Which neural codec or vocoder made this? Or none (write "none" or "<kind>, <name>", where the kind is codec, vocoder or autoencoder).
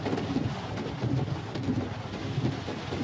vocoder, BigVGAN v2